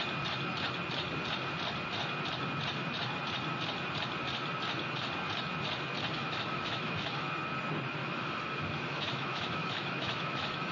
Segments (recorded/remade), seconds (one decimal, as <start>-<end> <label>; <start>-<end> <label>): 0.0-6.2 recorded; 6.2-7.2 remade; 7.2-8.0 recorded; 8.0-10.7 remade